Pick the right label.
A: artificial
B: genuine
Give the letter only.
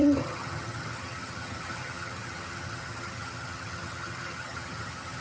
A